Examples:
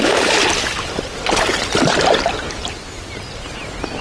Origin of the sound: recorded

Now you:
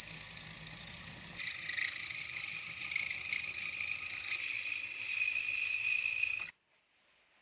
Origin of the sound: recorded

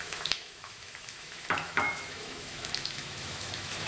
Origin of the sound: remade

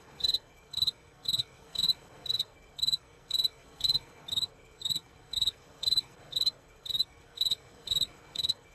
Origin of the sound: remade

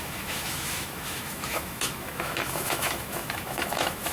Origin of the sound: remade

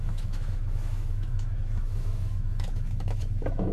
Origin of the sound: remade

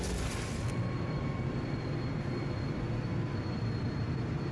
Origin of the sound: remade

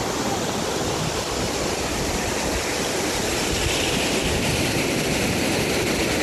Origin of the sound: remade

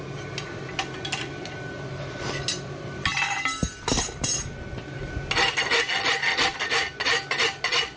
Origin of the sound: recorded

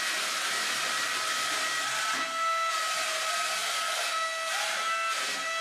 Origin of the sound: recorded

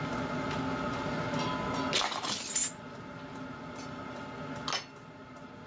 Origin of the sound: recorded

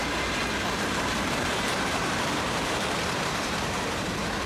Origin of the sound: remade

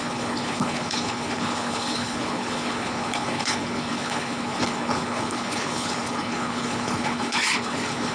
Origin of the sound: remade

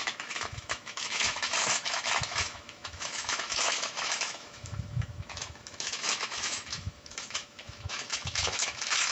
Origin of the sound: remade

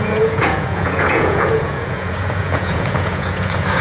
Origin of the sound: remade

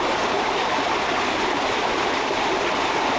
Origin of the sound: recorded